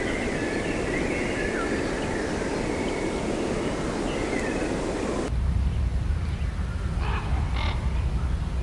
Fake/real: real